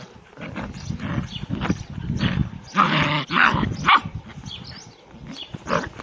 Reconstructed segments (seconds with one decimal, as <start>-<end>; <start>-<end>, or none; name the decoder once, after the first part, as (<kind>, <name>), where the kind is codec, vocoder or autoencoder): none